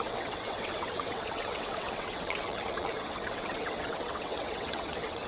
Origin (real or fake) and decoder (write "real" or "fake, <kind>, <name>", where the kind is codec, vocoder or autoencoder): fake, vocoder, WaveNeXt